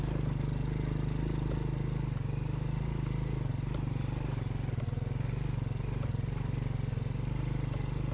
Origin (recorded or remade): recorded